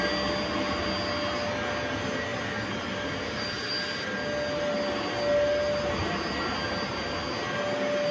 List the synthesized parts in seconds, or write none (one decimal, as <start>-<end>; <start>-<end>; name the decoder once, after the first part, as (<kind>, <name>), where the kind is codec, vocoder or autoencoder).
none